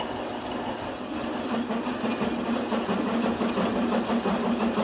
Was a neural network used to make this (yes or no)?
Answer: no